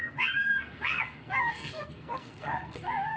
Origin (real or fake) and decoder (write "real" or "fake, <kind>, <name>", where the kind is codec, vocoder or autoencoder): fake, codec, SNAC